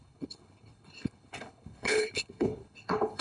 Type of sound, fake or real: fake